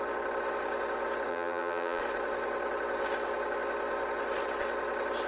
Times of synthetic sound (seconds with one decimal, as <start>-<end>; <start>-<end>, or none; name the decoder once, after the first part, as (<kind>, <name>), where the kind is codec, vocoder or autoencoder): 1.3-2.0 (vocoder, BigVGAN v2)

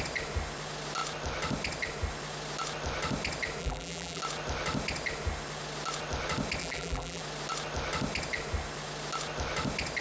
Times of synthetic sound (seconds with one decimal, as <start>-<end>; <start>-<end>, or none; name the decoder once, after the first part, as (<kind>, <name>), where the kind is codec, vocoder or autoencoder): 3.6-4.2 (vocoder, BigVGAN v2); 6.6-7.2